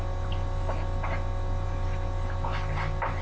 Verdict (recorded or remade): recorded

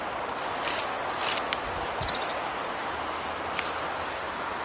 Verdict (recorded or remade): recorded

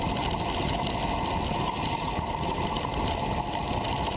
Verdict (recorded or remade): recorded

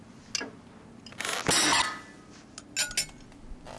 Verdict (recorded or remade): recorded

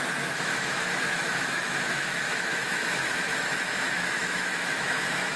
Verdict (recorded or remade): remade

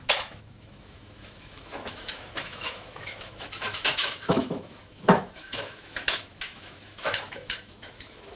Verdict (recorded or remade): remade